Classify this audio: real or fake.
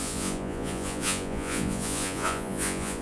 fake